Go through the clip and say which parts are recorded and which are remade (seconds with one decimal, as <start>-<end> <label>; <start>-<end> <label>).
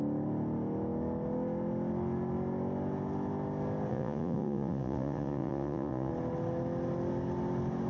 0.0-3.9 recorded; 3.9-6.1 remade; 6.1-7.9 recorded